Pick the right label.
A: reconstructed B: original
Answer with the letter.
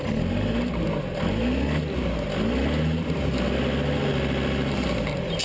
B